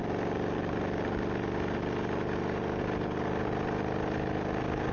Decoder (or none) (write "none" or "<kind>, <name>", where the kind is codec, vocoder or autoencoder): none